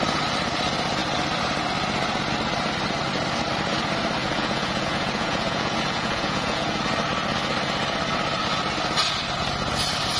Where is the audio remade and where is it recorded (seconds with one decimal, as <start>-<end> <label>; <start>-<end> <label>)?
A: 0.0-4.2 recorded; 4.2-6.8 remade; 6.8-10.2 recorded

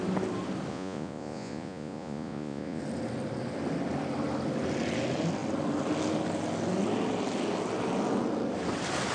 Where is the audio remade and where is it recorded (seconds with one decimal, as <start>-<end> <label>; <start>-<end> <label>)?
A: 0.0-0.7 recorded; 0.7-2.8 remade; 2.8-9.1 recorded

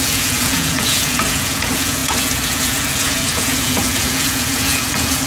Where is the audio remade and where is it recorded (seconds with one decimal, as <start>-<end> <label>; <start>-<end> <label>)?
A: 0.0-5.3 remade